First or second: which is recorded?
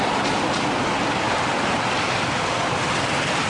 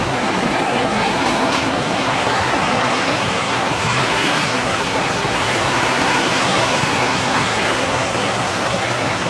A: first